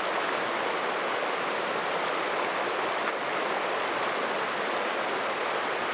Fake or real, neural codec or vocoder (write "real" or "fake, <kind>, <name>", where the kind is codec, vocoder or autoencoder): real